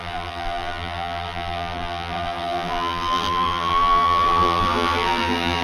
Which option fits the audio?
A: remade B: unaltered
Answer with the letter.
A